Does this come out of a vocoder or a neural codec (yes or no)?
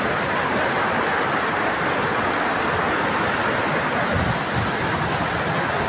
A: no